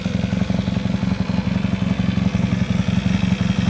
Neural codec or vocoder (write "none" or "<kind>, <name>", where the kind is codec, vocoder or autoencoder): none